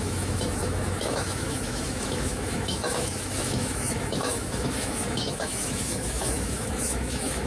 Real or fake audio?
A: fake